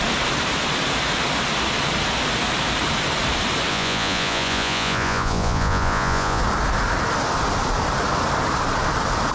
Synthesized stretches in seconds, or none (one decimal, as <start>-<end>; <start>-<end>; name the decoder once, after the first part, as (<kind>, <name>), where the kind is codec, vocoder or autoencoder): 3.7-6.4 (vocoder, Vocos)